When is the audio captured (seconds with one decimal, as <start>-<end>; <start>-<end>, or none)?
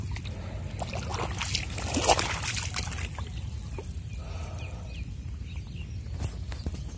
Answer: 0.0-7.0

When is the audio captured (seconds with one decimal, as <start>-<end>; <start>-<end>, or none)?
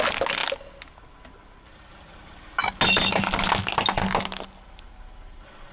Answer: 0.0-5.7